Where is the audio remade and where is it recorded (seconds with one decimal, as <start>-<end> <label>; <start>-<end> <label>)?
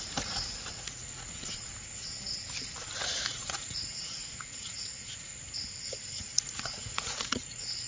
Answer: 0.0-2.1 remade; 2.1-3.3 recorded; 3.3-5.3 remade; 5.3-6.2 recorded; 6.2-7.9 remade